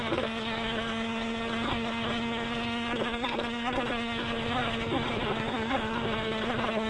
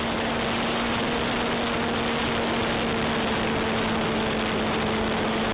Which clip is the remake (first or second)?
first